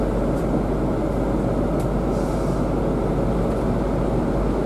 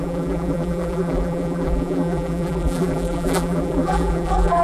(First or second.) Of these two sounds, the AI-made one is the second